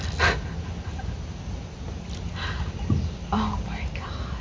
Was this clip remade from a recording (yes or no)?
no